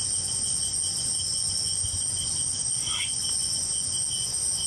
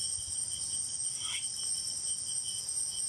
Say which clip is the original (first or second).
second